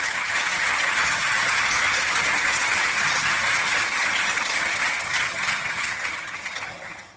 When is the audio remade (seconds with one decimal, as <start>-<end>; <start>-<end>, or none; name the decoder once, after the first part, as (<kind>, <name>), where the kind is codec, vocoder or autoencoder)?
0.0-7.2 (vocoder, HiFi-GAN)